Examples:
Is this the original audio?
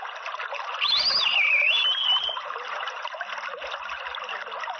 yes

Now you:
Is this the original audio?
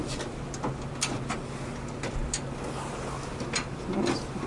yes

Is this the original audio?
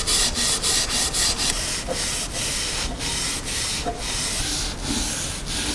yes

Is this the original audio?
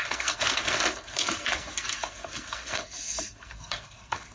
no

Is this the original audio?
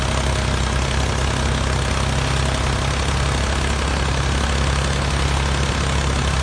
yes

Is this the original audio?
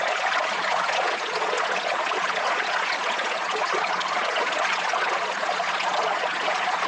no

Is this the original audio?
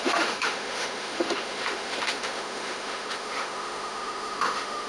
no